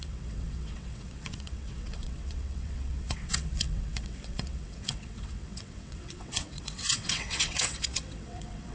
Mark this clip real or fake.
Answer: fake